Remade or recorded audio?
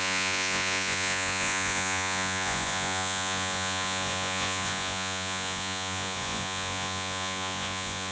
remade